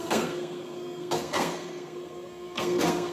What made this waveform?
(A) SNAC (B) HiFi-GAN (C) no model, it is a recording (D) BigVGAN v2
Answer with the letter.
A